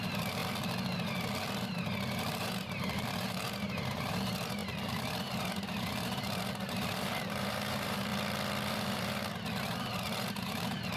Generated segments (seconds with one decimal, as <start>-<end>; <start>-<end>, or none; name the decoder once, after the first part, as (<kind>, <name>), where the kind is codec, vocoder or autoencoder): 0.0-0.4 (vocoder, BigVGAN v2); 2.3-8.1; 8.7-11.0